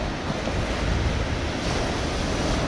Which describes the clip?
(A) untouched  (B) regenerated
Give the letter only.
A